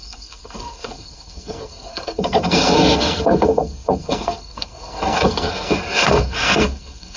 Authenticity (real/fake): fake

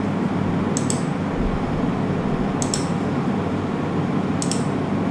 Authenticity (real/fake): real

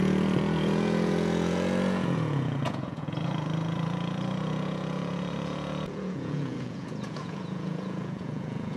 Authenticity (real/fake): fake